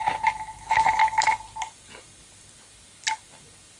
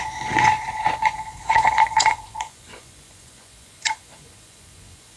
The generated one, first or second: second